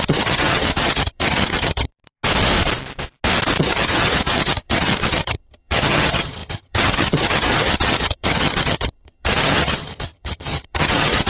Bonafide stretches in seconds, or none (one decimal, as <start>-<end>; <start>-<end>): 1.9-3.6